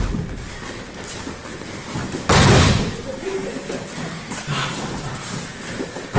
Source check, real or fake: real